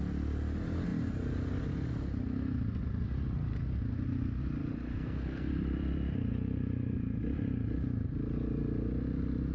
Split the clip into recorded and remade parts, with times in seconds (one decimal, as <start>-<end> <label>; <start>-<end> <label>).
0.0-4.9 recorded; 4.9-5.5 remade; 5.5-9.5 recorded